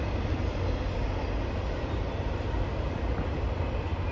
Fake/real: real